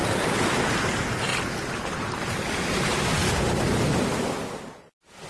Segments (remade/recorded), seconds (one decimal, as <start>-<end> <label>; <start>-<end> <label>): 0.0-5.3 recorded